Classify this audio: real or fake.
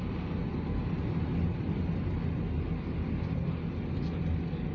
real